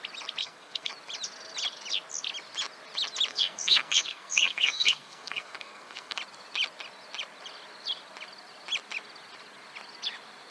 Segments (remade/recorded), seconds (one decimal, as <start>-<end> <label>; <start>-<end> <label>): 0.0-0.4 recorded; 0.4-0.9 remade; 0.9-3.3 recorded; 3.3-6.2 remade; 6.2-10.5 recorded